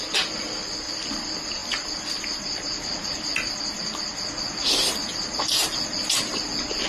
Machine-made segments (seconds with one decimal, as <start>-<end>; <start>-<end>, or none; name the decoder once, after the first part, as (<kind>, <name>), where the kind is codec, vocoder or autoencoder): none